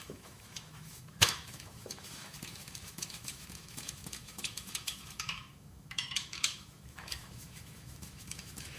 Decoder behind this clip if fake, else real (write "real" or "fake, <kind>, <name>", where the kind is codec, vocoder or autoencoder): fake, autoencoder, DAC-VAE